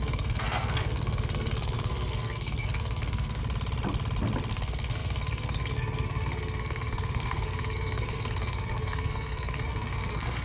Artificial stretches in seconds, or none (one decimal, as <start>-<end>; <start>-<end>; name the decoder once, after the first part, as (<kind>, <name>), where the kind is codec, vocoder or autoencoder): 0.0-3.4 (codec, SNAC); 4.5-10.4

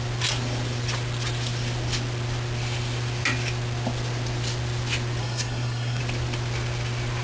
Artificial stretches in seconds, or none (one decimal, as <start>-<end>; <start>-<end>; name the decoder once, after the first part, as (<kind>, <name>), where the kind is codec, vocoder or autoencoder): 5.2-6.0 (codec, SNAC)

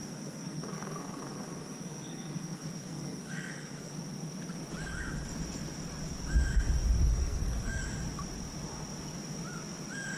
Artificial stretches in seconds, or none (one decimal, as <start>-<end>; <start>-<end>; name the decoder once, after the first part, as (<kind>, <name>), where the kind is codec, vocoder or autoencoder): 0.0-3.9 (codec, SNAC); 7.1-7.8